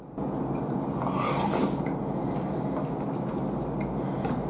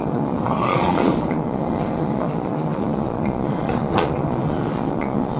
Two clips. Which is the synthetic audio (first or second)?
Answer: second